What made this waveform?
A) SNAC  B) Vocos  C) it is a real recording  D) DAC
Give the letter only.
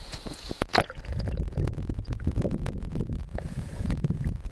B